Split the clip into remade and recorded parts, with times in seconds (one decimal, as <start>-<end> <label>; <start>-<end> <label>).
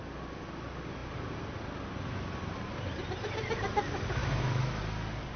0.0-4.2 recorded; 4.2-4.8 remade; 4.8-5.4 recorded